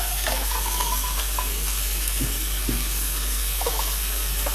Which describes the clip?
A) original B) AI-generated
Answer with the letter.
B